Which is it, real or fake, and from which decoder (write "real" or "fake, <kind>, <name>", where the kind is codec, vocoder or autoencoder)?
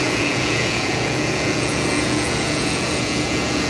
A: fake, vocoder, Vocos